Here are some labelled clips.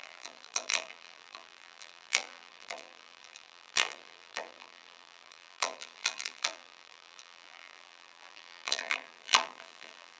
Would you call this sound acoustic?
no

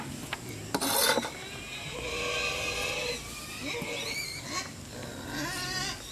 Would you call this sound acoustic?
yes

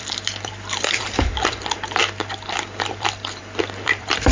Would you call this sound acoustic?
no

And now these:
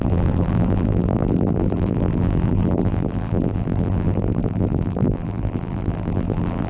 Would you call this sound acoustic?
no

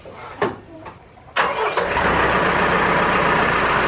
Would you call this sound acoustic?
no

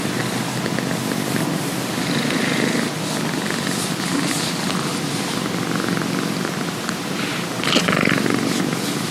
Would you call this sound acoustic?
yes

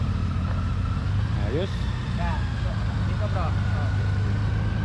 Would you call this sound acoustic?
yes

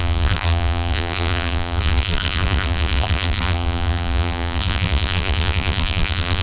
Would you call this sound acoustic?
no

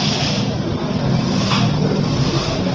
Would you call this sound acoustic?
no